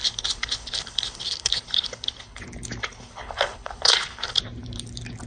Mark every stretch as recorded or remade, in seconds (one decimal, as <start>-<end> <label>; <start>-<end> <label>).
0.0-2.4 remade; 2.4-2.8 recorded; 2.8-4.4 remade; 4.4-5.3 recorded